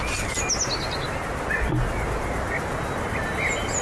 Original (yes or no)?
yes